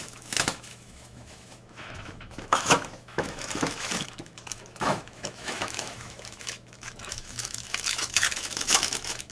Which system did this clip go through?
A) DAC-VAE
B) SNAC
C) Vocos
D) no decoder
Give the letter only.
A